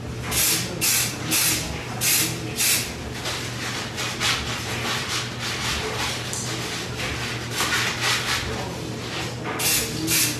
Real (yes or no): yes